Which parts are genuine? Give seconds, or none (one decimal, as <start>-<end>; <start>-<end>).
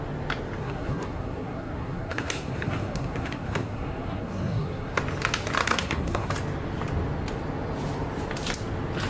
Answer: 0.0-0.6; 5.0-5.6; 6.3-9.1